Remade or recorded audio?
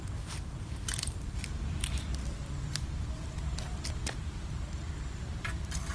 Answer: remade